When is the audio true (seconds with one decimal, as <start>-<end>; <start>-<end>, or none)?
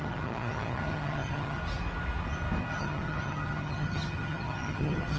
1.6-2.7